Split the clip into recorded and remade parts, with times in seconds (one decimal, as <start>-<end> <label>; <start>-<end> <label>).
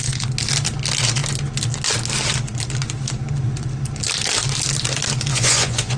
0.0-5.3 recorded; 5.3-6.0 remade